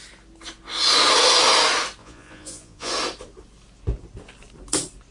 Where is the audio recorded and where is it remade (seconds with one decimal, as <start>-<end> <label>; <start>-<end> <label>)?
0.0-2.0 recorded; 2.0-2.9 remade; 2.9-5.1 recorded

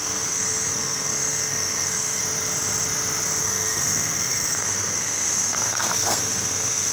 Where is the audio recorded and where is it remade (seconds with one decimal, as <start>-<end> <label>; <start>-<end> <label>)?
0.0-2.2 remade; 2.2-3.4 recorded; 3.4-6.9 remade